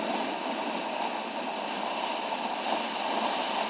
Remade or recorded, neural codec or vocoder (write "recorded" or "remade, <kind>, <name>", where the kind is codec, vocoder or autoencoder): recorded